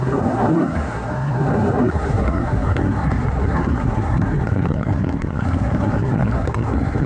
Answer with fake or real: fake